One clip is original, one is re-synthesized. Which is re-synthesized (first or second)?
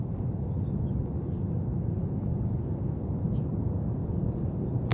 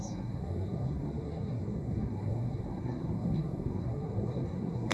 second